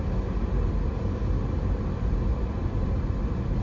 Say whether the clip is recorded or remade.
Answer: recorded